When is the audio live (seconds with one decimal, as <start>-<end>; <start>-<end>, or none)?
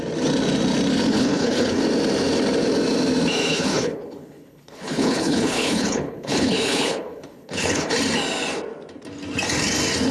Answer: 0.0-1.1; 1.8-3.5; 7.9-10.1